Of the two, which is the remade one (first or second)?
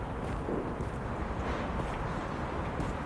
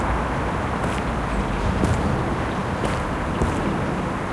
first